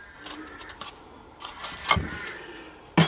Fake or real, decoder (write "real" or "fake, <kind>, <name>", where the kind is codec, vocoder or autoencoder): real